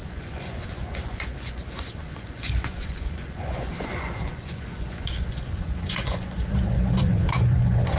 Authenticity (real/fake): fake